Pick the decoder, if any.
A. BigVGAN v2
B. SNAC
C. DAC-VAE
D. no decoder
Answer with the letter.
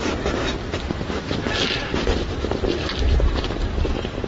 D